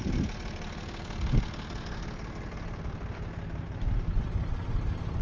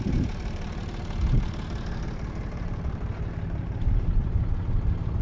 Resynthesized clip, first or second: second